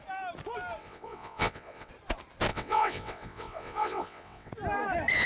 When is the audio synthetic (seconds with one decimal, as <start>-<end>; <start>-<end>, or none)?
0.8-1.9; 2.5-4.5

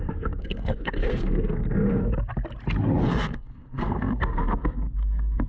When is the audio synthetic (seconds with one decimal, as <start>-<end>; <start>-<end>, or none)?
0.0-2.1; 3.0-5.5

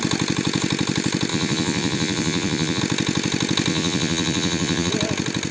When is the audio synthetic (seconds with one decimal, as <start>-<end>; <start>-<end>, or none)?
1.3-2.8; 3.7-4.9

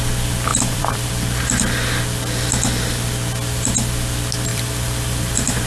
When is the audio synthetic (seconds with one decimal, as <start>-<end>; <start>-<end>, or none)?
0.5-1.1; 4.5-5.7

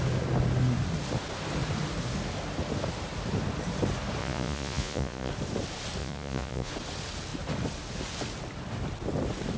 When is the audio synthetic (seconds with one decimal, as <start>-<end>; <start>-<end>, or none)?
4.2-5.3; 6.0-6.7

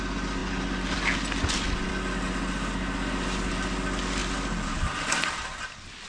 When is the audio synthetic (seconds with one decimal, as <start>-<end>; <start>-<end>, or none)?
none

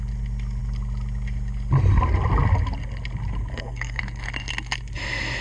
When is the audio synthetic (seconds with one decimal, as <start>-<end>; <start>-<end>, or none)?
3.5-4.0